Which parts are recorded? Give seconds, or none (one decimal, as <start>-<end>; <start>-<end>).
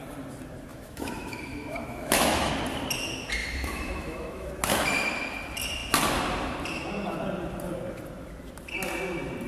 0.0-0.7; 2.5-3.4; 4.5-9.5